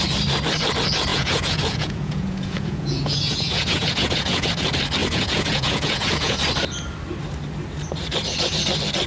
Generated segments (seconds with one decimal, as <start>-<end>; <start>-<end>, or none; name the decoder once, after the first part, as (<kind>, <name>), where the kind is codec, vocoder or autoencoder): 1.1-4.5 (vocoder, Vocos); 5.0-6.4